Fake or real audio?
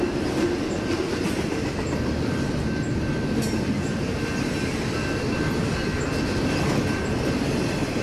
real